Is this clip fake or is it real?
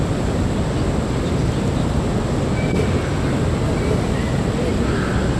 real